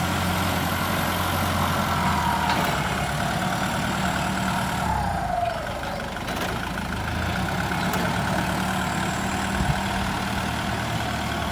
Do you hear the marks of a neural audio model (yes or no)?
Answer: no